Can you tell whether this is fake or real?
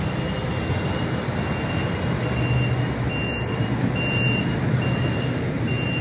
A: real